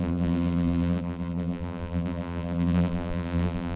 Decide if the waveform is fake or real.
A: fake